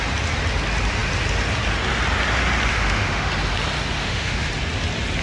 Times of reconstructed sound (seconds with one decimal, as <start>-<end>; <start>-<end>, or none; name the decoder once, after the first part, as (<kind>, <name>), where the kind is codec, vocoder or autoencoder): 2.7-3.3 (autoencoder, DAC-VAE); 4.0-4.5